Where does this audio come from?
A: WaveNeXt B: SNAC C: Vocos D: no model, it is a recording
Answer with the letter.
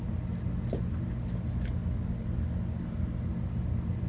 D